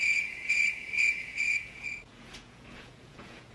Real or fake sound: fake